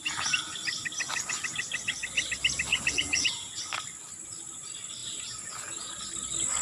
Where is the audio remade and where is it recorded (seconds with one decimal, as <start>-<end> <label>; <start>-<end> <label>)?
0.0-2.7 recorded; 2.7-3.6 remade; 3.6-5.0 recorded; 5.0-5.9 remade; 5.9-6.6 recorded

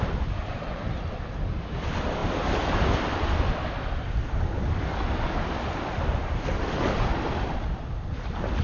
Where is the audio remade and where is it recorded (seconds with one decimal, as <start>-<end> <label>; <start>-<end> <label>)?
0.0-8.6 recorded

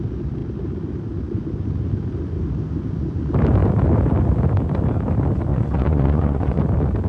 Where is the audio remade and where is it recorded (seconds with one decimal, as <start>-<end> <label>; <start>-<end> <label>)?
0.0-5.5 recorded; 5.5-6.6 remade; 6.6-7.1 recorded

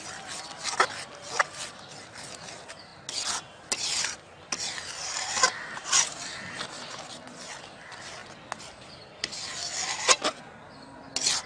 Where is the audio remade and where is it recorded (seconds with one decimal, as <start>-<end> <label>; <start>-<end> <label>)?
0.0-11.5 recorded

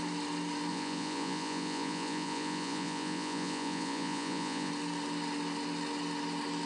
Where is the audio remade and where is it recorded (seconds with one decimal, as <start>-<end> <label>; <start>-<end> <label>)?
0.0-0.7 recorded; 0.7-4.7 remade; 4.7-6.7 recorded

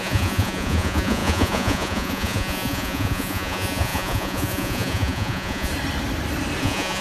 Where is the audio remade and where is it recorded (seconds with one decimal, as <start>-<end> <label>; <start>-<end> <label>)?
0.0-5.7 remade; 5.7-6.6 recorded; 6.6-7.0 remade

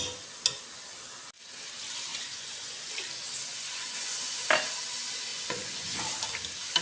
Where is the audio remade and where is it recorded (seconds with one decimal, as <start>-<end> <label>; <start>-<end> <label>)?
0.0-2.1 recorded; 2.1-2.9 remade; 2.9-3.5 recorded; 3.5-4.4 remade; 4.4-5.3 recorded; 5.3-6.0 remade; 6.0-6.8 recorded